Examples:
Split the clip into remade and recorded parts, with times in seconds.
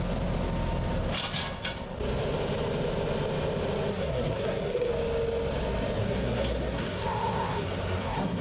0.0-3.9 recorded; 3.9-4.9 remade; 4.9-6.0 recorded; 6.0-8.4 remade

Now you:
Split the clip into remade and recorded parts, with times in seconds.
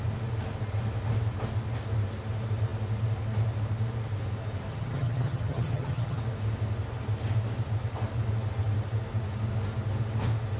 0.0-4.7 recorded; 4.7-6.2 remade; 6.2-10.6 recorded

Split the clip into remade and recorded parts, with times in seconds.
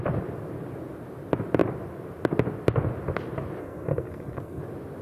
0.0-3.6 recorded; 3.6-4.6 remade; 4.6-5.0 recorded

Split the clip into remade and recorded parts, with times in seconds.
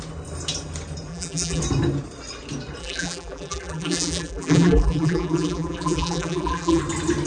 0.0-1.1 recorded; 1.1-1.6 remade; 1.6-2.8 recorded; 2.8-6.8 remade; 6.8-7.3 recorded